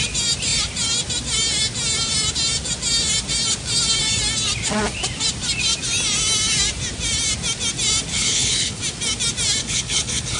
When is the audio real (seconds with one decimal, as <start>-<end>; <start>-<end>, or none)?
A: 0.0-8.1; 8.8-9.6